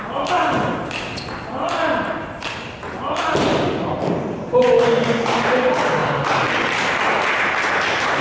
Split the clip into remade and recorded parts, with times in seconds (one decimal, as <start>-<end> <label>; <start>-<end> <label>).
0.0-8.2 recorded